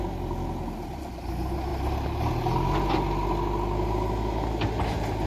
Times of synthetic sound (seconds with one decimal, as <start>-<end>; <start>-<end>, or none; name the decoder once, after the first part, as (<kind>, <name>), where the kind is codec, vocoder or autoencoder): none